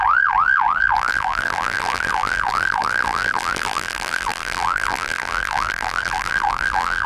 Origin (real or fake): fake